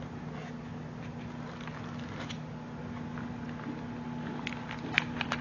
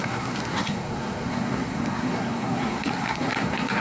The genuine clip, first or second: first